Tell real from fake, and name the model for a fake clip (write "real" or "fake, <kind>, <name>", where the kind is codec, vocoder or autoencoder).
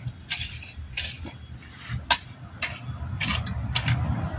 real